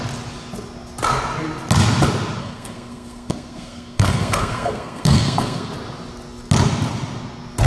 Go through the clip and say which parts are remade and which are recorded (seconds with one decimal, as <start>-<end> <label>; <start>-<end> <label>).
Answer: 0.0-2.4 recorded; 2.4-5.7 remade; 5.7-7.7 recorded